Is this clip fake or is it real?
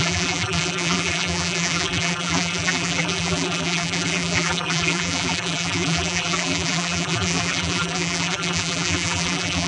fake